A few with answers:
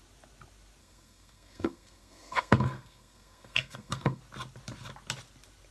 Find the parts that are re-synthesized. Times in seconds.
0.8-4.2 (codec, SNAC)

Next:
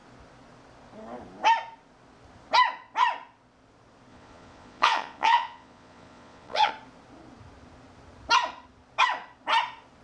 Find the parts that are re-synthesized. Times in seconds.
4.1-6.7 (vocoder, Vocos)

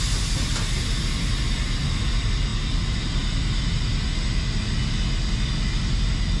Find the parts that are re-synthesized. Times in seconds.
none

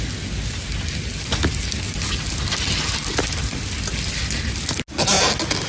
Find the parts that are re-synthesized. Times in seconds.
none

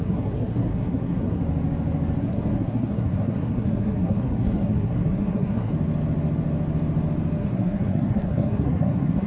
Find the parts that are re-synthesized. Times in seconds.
0.0-1.4 (codec, SNAC); 2.2-5.7; 7.4-9.3

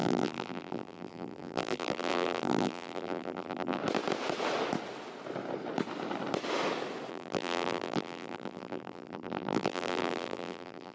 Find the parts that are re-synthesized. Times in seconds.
0.0-3.8 (vocoder, BigVGAN v2); 7.1-10.9

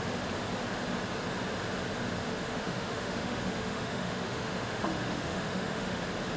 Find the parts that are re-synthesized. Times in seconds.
2.2-6.0 (autoencoder, DAC-VAE)

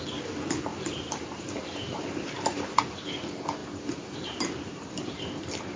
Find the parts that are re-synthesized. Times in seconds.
0.7-2.8 (vocoder, BigVGAN v2); 3.6-5.8